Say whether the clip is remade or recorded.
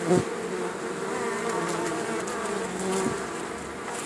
recorded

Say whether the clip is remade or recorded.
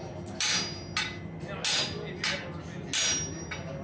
recorded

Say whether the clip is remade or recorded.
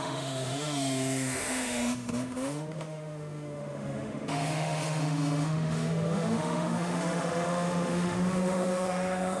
remade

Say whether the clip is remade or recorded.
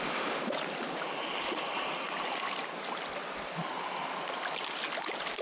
recorded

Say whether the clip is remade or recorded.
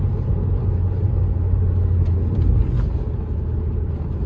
recorded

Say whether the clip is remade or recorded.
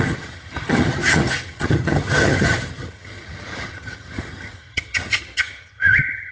remade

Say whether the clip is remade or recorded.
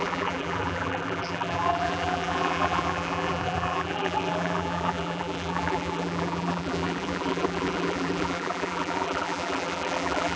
remade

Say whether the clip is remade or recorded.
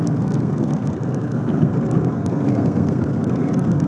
remade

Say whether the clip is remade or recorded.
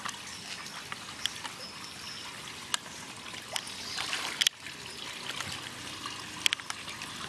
recorded